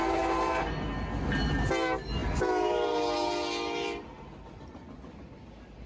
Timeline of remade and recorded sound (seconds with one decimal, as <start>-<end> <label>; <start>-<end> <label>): 0.0-5.9 recorded